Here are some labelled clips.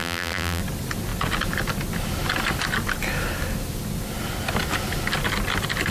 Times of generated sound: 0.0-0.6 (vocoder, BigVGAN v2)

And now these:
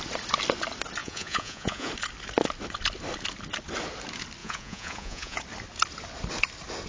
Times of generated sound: 1.0-1.9 (vocoder, Vocos); 4.4-5.4

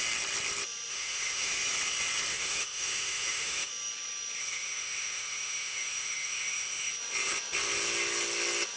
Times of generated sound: 0.9-1.5 (autoencoder, DAC-VAE); 2.3-3.7; 4.4-6.9

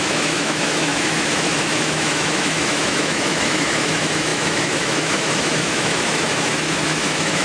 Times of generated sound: 0.0-7.4 (autoencoder, DAC-VAE)

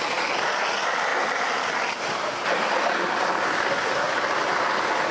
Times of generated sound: none